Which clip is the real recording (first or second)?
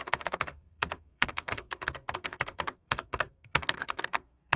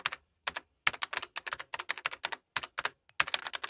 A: second